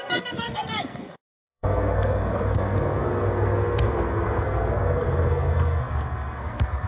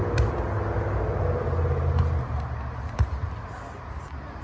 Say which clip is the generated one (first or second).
first